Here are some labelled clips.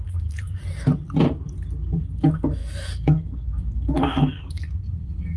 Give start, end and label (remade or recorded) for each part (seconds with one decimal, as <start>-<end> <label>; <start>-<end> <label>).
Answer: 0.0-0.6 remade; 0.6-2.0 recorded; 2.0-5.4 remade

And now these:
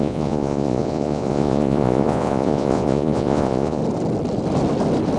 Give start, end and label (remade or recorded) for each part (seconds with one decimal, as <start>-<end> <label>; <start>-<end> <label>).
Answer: 0.0-3.8 remade; 3.8-5.2 recorded

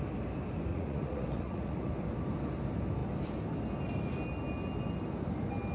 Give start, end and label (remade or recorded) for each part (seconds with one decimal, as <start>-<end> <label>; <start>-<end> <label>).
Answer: 0.0-0.7 recorded; 0.7-1.9 remade; 1.9-5.7 recorded

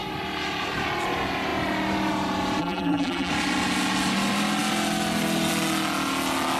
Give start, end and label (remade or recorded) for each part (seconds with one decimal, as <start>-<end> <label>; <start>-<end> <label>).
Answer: 0.0-2.6 recorded; 2.6-3.3 remade; 3.3-6.6 recorded